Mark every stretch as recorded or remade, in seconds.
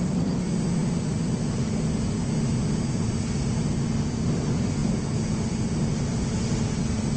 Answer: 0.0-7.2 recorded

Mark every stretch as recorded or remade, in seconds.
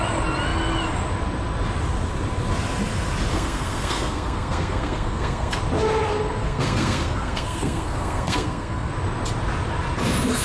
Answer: 0.0-3.3 recorded; 3.3-5.6 remade; 5.6-6.4 recorded; 6.4-8.9 remade; 8.9-10.4 recorded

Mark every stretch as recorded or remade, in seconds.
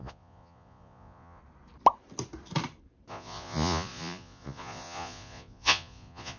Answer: 0.0-1.4 remade; 1.4-3.1 recorded; 3.1-6.4 remade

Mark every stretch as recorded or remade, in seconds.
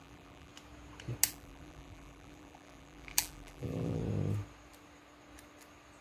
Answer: 0.0-0.5 remade; 0.5-1.3 recorded; 1.3-4.0 remade; 4.0-6.0 recorded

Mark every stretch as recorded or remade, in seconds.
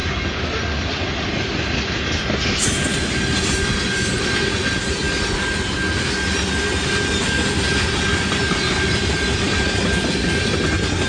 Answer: 0.0-11.1 recorded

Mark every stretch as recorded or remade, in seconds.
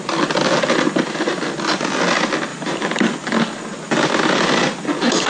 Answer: 0.0-2.5 recorded; 2.5-3.4 remade; 3.4-5.3 recorded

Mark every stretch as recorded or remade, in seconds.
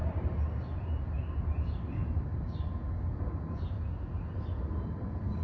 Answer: 0.0-5.4 recorded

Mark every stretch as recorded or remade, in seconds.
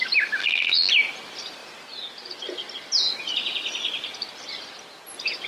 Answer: 0.0-0.4 recorded; 0.4-0.9 remade; 0.9-5.5 recorded